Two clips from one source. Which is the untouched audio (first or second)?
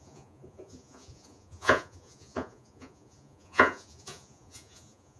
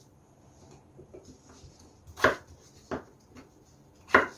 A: second